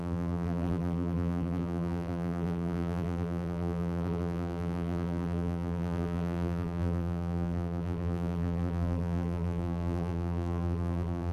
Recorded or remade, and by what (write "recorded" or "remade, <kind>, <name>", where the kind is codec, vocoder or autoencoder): remade, vocoder, BigVGAN v2